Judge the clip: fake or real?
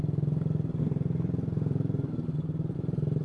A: fake